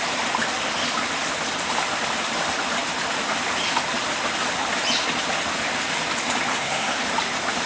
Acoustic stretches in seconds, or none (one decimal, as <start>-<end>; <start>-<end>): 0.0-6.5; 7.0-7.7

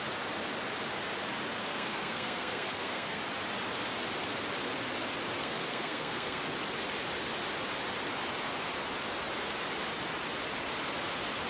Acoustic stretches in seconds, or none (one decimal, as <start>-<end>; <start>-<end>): 0.0-1.6; 3.2-5.4; 6.4-11.5

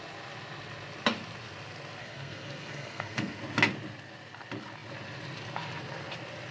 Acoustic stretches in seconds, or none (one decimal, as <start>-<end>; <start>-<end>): 0.0-2.0; 3.4-6.5

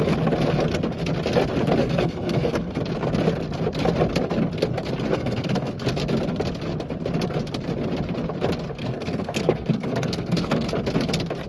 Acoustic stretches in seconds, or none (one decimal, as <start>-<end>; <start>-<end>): 0.0-1.8; 2.8-5.1; 5.7-8.8; 10.7-11.5